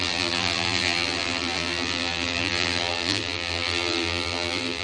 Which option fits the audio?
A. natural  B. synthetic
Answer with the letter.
B